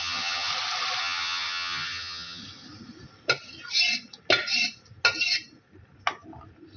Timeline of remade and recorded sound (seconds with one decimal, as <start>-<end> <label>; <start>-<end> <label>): 0.0-0.5 remade; 0.5-1.0 recorded; 1.0-2.4 remade; 2.4-6.8 recorded